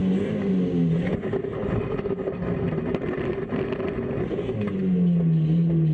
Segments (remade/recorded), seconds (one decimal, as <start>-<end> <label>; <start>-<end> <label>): 0.0-5.9 recorded